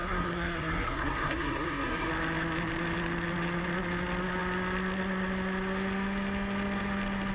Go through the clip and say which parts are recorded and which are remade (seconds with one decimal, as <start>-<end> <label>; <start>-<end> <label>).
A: 0.0-2.1 remade; 2.1-7.3 recorded